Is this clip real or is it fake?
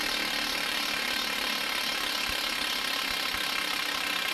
fake